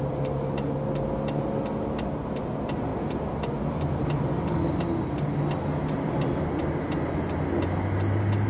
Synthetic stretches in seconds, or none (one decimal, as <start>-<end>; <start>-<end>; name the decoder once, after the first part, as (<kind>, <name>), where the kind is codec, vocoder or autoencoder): 2.9-4.0 (vocoder, BigVGAN v2)